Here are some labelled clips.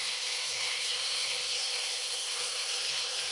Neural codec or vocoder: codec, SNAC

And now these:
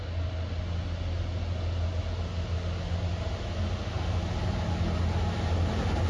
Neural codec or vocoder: none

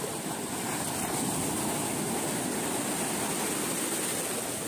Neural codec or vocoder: none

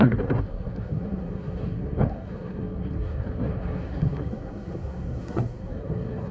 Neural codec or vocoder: codec, SNAC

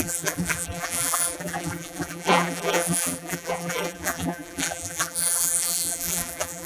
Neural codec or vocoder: vocoder, BigVGAN v2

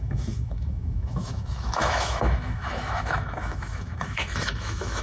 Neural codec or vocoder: autoencoder, DAC-VAE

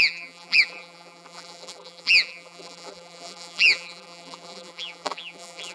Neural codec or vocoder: vocoder, BigVGAN v2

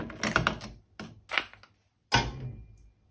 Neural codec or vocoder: none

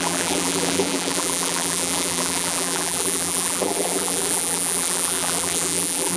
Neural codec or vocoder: vocoder, BigVGAN v2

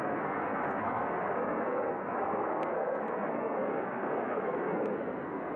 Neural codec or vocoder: codec, SNAC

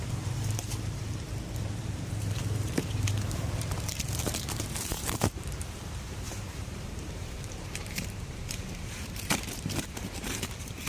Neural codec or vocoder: vocoder, BigVGAN v2